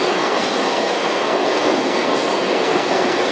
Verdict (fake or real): fake